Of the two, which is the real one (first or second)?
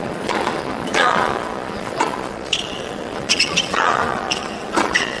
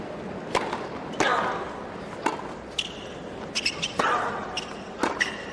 second